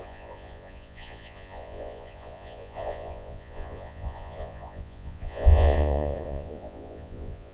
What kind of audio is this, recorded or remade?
remade